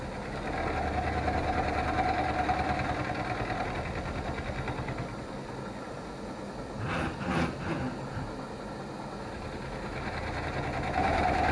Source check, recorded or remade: recorded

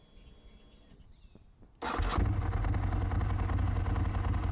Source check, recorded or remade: recorded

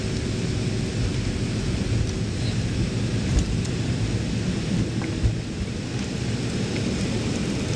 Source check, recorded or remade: recorded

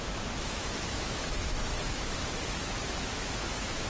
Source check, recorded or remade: remade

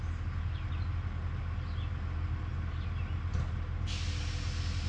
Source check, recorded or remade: recorded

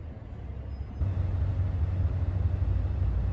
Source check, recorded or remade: recorded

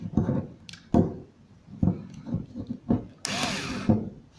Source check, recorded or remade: recorded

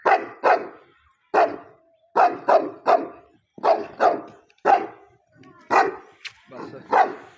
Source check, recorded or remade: recorded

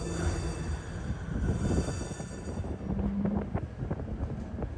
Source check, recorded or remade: recorded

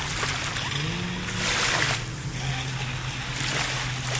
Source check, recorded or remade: recorded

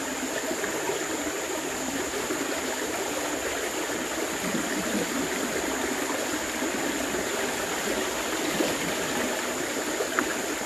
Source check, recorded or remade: recorded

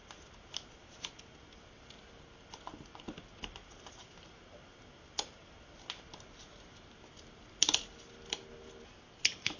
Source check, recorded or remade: recorded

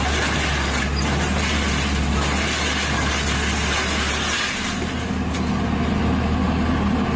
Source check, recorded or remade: recorded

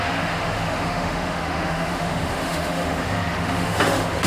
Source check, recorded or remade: remade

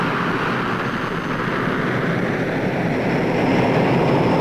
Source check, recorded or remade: recorded